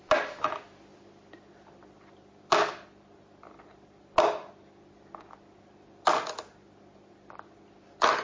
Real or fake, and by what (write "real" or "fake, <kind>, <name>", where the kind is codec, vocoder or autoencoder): real